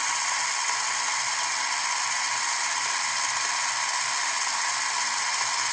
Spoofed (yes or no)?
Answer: no